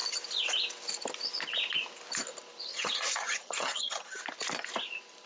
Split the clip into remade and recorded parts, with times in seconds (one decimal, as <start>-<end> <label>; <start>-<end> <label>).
0.0-2.7 recorded; 2.7-4.2 remade; 4.2-5.3 recorded